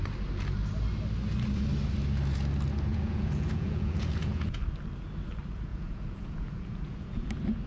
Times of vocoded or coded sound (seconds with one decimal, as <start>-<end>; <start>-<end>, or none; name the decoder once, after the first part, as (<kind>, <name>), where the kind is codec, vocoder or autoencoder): 2.9-4.6 (vocoder, Vocos); 5.7-7.3